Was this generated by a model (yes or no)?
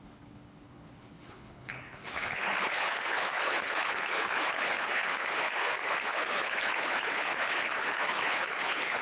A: yes